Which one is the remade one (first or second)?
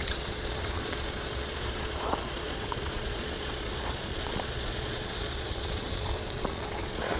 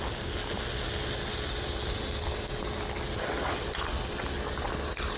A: first